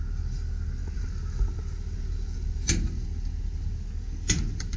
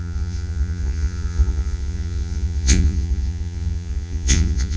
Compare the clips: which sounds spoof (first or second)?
second